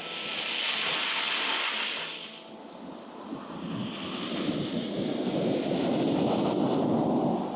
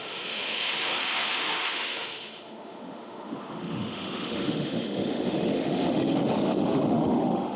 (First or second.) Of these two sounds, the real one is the first